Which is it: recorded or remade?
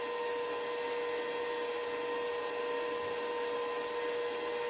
recorded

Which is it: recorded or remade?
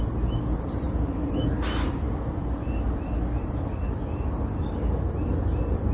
recorded